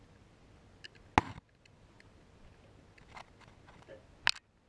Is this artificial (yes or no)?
no